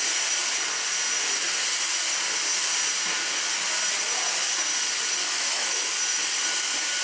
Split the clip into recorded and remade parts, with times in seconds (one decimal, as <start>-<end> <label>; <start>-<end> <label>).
0.0-5.2 recorded; 5.2-5.9 remade; 5.9-7.0 recorded